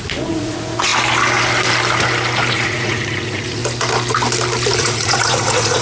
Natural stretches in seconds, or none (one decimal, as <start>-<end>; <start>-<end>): 0.9-2.5; 3.6-4.8